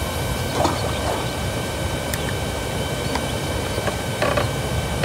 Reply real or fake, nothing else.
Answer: fake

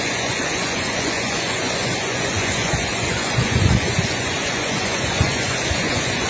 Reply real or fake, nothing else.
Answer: fake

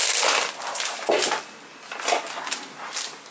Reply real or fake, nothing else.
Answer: real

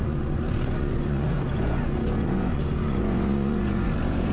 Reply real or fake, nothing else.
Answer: fake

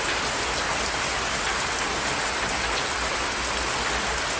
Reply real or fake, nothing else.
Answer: real